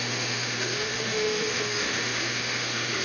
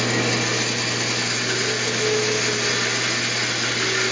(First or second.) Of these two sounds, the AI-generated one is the first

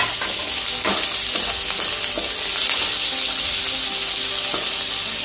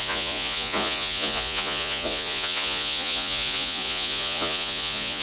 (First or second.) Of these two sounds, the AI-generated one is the second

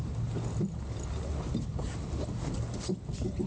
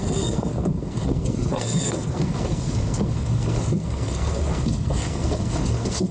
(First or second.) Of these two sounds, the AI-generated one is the second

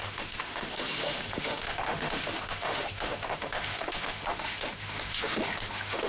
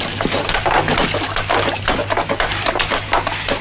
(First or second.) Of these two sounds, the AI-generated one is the first